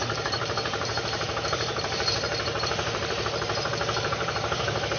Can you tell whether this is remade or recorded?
remade